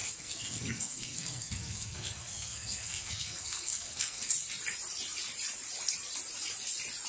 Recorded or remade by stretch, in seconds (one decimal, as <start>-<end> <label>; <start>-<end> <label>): 0.0-4.3 remade; 4.3-7.1 recorded